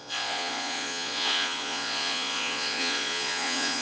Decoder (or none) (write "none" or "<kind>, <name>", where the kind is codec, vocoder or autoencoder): vocoder, Vocos